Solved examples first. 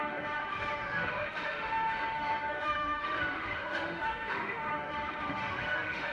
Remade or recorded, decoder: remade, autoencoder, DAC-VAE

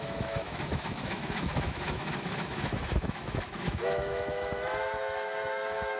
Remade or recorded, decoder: remade, autoencoder, DAC-VAE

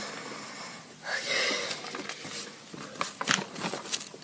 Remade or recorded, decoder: recorded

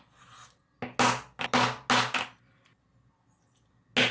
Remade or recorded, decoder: recorded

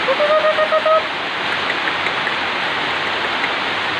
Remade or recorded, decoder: recorded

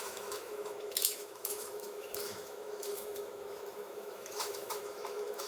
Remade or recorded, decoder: remade, autoencoder, DAC-VAE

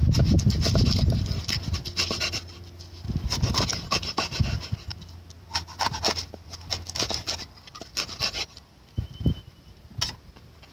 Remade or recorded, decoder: recorded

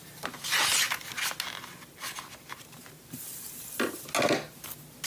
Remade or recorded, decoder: recorded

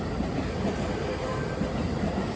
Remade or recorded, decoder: recorded